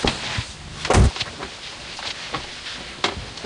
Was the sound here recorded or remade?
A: recorded